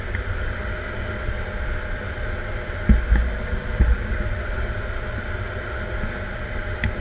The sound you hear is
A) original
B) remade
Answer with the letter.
A